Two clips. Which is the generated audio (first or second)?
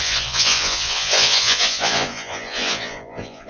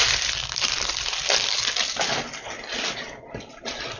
first